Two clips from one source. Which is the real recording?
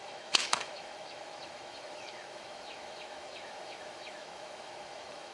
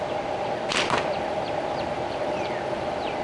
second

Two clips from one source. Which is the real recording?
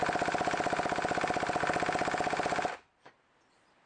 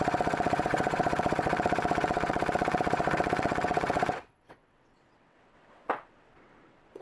first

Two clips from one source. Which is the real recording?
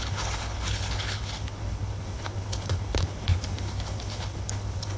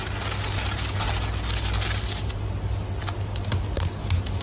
second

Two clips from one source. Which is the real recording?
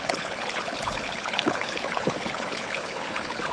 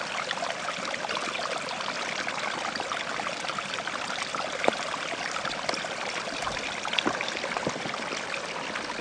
second